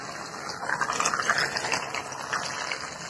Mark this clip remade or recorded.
recorded